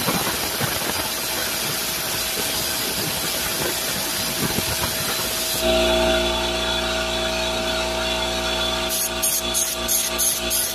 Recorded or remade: recorded